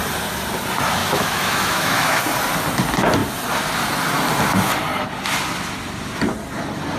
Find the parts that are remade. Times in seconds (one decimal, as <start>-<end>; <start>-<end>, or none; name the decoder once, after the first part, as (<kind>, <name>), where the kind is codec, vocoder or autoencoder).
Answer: 1.0-2.2 (autoencoder, DAC-VAE)